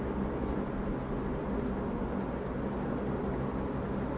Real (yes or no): yes